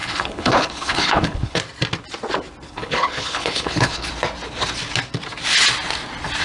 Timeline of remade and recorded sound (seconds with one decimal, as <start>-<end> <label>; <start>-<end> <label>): 0.0-1.6 remade; 1.6-2.7 recorded; 2.7-4.1 remade; 4.1-6.4 recorded